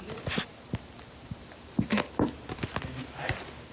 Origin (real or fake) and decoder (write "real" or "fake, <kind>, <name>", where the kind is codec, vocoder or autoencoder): real